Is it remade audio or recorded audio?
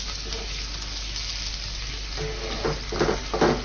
recorded